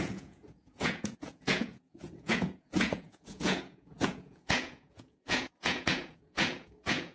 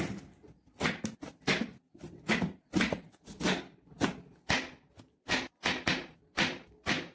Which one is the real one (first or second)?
second